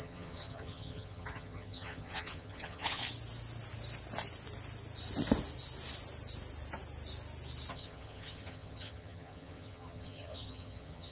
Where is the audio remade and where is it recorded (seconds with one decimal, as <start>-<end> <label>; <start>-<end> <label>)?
0.0-3.0 remade; 3.0-7.7 recorded; 7.7-11.1 remade